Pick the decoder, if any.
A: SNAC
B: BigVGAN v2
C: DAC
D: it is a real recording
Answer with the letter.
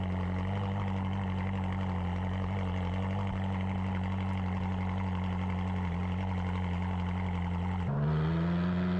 D